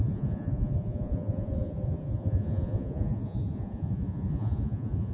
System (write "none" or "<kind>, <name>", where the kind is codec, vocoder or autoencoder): vocoder, Vocos